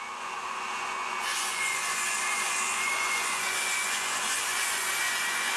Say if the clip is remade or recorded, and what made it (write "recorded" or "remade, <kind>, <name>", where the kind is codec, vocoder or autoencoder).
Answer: remade, vocoder, Vocos